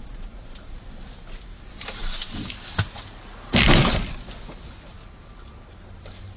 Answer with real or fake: real